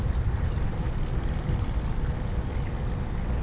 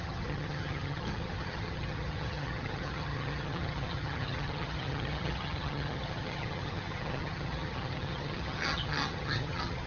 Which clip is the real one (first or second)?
first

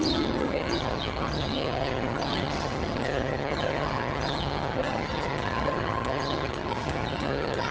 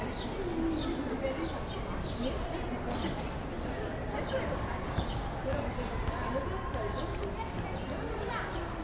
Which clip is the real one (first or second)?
second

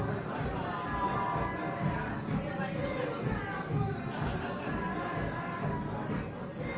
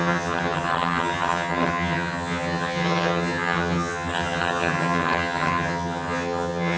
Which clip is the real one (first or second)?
first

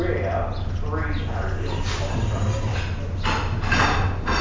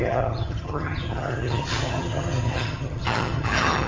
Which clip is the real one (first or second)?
first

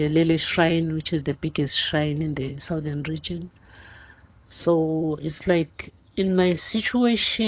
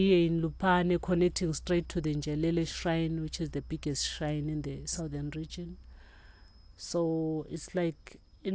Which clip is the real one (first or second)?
second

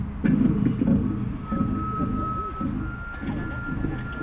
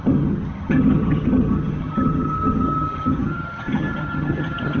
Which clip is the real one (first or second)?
first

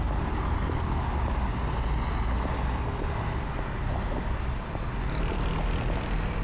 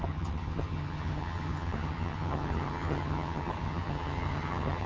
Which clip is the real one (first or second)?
first